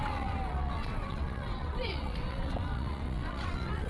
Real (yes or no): no